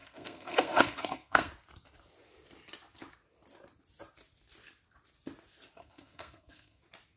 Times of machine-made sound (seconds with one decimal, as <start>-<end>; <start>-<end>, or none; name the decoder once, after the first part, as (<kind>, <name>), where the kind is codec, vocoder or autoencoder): 0.0-1.5 (codec, SNAC); 5.8-6.8